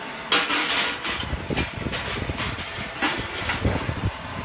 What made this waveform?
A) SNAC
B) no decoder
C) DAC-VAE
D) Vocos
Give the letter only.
B